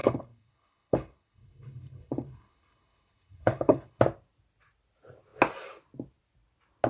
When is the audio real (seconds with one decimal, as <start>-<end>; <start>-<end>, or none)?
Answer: 4.0-6.9